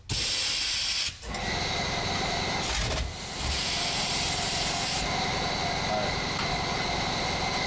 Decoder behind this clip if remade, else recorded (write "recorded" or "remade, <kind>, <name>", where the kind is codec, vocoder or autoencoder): recorded